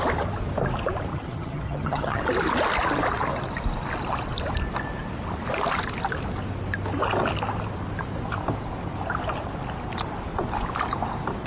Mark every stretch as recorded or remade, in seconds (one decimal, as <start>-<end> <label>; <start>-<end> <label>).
0.0-1.1 recorded; 1.1-2.2 remade; 2.2-11.5 recorded